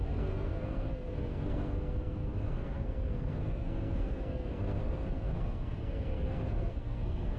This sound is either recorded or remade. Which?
remade